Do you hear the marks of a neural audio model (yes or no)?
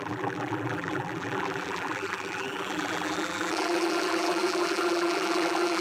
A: yes